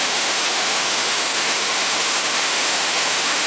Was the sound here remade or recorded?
remade